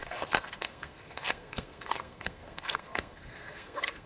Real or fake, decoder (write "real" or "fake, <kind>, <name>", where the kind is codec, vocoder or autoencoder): fake, codec, SNAC